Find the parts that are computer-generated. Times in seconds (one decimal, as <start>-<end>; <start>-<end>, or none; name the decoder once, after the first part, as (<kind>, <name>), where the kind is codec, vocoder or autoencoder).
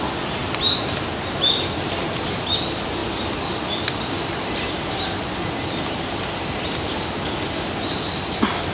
none